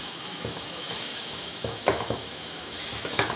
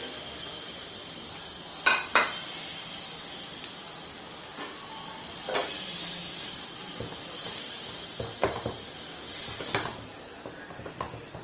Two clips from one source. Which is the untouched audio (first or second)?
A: second